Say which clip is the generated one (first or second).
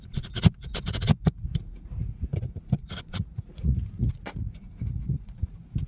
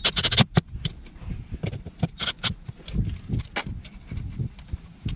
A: first